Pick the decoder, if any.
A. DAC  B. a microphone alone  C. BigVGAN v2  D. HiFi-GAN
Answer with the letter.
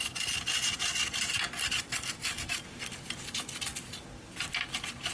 B